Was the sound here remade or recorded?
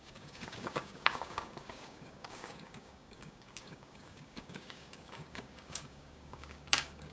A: remade